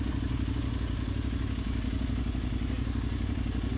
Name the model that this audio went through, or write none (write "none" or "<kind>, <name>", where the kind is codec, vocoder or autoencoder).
none